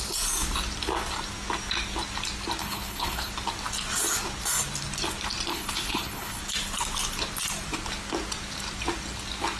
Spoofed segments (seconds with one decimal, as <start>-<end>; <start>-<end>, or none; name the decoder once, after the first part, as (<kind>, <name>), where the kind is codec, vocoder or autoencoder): 2.6-3.3 (codec, HILCodec); 5.5-6.4